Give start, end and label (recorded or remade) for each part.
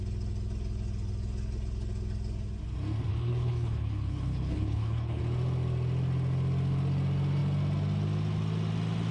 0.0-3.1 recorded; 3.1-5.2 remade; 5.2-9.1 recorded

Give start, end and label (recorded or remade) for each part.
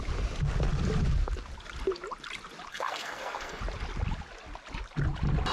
0.0-2.7 recorded; 2.7-3.6 remade; 3.6-5.5 recorded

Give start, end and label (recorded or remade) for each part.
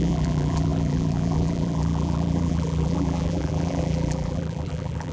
0.0-5.1 remade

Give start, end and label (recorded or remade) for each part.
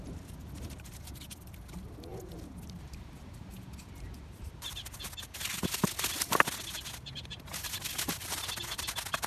0.0-9.3 recorded